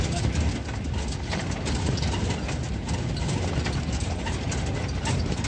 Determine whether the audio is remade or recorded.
recorded